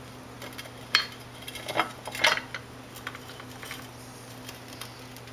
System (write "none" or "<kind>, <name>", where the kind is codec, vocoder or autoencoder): none